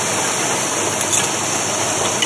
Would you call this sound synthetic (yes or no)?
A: no